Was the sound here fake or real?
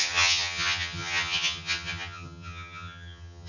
fake